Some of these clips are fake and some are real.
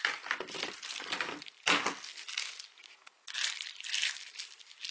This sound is real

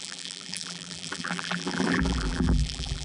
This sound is fake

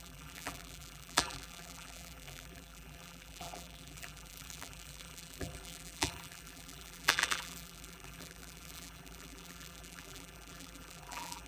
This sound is fake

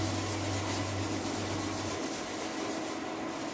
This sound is real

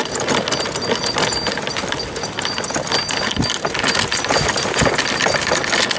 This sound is real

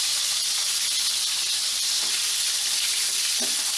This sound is real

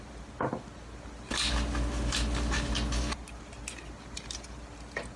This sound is real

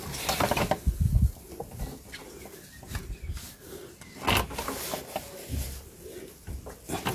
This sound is real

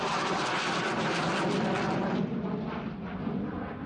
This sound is fake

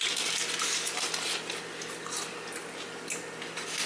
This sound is real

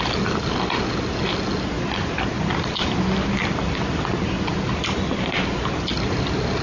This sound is real